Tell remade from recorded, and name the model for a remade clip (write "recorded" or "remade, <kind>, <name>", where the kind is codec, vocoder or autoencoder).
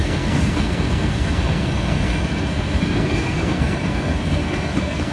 remade, codec, SNAC